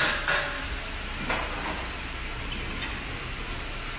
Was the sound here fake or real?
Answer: real